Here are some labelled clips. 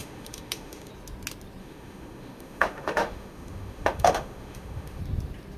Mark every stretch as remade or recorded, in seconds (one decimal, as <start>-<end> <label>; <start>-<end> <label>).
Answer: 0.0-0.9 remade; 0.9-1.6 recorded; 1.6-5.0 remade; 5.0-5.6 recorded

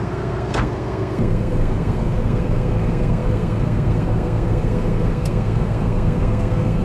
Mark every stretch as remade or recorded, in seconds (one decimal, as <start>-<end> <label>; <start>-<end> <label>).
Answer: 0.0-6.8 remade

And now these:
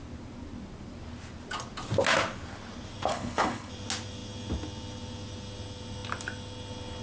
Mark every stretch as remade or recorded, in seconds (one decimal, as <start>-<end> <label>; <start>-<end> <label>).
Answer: 0.0-3.1 recorded; 3.1-3.7 remade; 3.7-7.0 recorded